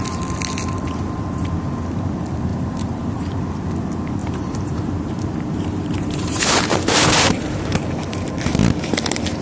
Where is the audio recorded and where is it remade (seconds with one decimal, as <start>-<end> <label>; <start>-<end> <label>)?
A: 0.0-2.5 recorded; 2.5-3.3 remade; 3.3-4.2 recorded; 4.2-7.7 remade; 7.7-9.4 recorded